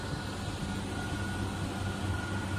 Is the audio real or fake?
real